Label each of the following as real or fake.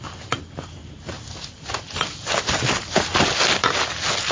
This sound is real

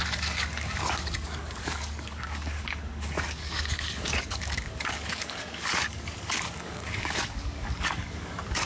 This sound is fake